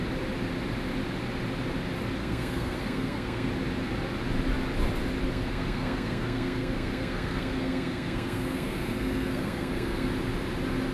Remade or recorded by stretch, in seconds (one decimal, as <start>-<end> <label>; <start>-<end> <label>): 0.0-2.2 recorded; 2.2-3.5 remade; 3.5-5.3 recorded; 5.3-10.1 remade; 10.1-10.9 recorded